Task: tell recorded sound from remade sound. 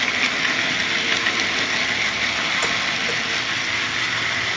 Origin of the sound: recorded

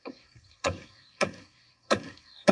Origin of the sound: remade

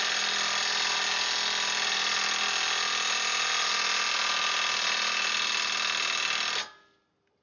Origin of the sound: recorded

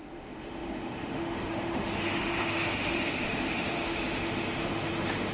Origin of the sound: remade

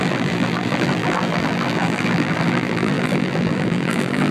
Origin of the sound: remade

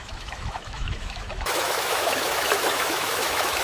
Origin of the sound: remade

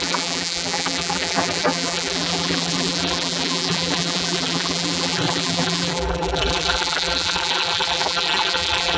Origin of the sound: remade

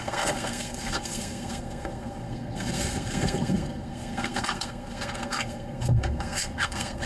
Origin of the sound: remade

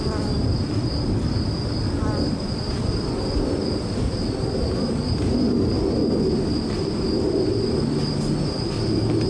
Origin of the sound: recorded